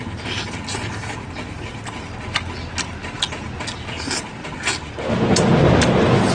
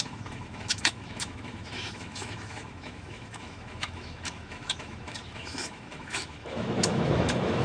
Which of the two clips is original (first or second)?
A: first